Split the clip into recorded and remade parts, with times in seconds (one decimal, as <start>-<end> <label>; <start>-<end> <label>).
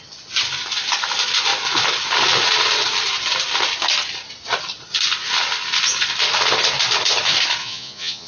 0.0-7.6 recorded; 7.6-8.3 remade